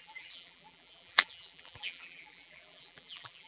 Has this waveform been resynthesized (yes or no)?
yes